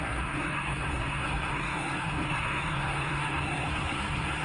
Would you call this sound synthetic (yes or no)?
yes